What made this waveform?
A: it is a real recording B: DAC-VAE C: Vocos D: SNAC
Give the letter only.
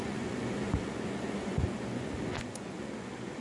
C